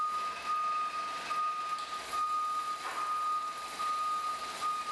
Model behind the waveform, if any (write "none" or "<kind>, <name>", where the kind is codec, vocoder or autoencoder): none